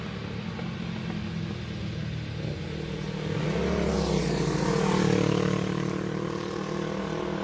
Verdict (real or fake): real